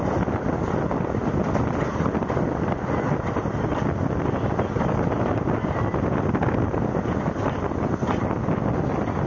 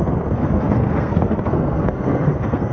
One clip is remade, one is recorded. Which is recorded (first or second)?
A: first